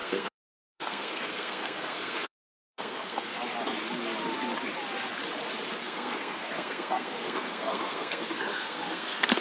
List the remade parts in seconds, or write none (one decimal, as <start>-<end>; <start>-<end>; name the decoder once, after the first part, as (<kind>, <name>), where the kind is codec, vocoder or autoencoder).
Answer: 0.0-3.3 (codec, SNAC); 5.8-9.4